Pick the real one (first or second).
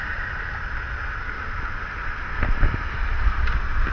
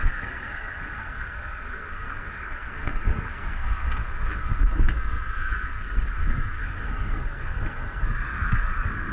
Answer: first